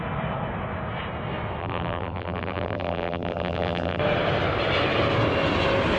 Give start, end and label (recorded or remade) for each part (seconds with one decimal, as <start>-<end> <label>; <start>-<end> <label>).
0.0-1.6 recorded; 1.6-4.0 remade; 4.0-6.0 recorded